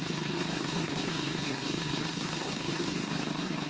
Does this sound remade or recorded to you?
remade